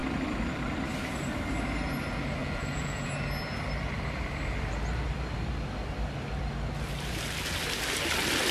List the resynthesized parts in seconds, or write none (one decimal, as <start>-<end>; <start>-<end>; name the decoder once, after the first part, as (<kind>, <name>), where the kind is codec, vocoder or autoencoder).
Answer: 2.4-3.1 (vocoder, Vocos)